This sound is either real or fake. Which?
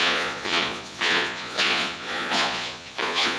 fake